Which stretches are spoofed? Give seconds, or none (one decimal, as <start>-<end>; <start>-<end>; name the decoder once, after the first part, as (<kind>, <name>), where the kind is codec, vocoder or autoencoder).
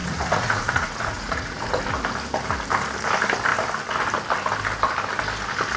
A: 0.0-1.8 (vocoder, Vocos)